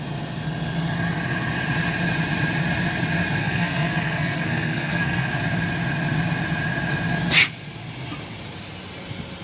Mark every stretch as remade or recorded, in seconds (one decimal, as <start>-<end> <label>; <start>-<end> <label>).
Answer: 0.0-3.4 recorded; 3.4-5.3 remade; 5.3-9.4 recorded

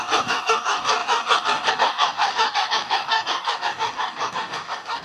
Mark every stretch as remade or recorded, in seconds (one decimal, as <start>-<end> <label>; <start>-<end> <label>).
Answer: 0.0-5.0 remade

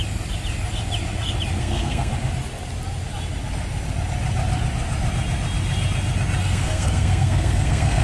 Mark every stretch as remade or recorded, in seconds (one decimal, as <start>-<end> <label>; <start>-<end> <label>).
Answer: 0.0-1.6 recorded; 1.6-2.1 remade; 2.1-6.4 recorded; 6.4-8.0 remade

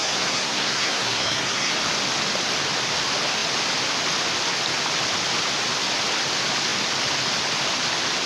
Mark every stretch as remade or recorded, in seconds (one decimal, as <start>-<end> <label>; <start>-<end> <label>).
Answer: 0.0-1.7 remade; 1.7-8.3 recorded

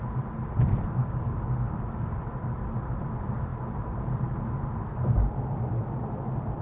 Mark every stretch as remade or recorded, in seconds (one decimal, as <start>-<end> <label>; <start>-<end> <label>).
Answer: 0.0-1.0 recorded; 1.0-2.2 remade; 2.2-6.6 recorded